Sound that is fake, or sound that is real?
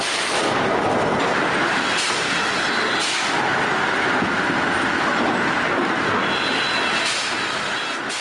real